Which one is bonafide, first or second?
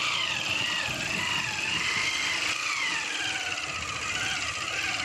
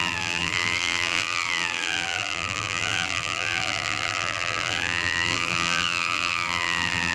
first